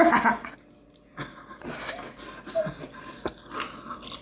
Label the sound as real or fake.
real